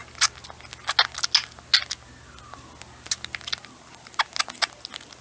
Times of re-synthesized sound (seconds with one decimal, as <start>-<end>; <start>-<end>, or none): none